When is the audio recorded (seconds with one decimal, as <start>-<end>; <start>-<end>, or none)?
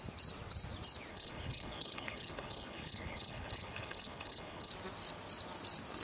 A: 0.0-1.1; 4.7-6.0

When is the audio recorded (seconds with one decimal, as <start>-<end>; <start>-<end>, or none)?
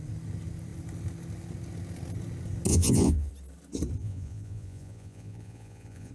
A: 0.0-2.7; 3.3-4.0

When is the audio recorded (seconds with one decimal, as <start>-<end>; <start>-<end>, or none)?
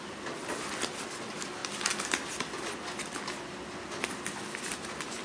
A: 0.0-5.2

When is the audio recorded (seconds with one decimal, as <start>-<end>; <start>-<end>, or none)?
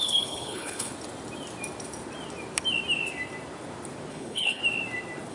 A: 0.9-4.1; 4.6-5.3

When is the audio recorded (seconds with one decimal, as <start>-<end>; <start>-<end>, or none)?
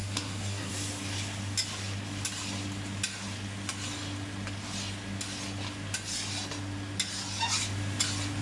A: 0.7-8.4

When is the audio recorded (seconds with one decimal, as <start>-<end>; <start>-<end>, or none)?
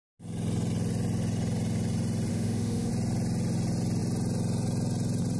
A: 0.0-2.3; 2.9-5.4